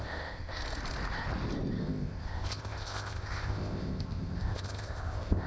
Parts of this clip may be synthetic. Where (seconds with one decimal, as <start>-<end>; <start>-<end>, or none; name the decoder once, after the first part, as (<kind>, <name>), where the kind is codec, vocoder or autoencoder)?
0.0-0.6 (codec, ZipCodec); 1.8-5.5